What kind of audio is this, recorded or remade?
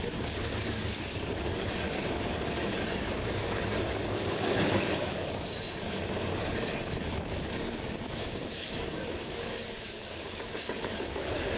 remade